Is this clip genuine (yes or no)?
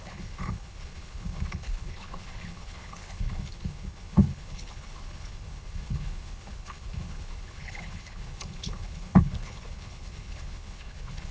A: no